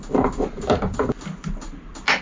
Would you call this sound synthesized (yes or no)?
no